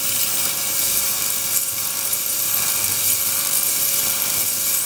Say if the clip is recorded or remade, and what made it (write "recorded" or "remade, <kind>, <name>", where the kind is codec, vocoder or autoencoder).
remade, vocoder, BigVGAN v2